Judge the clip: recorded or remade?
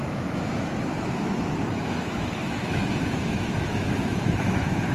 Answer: remade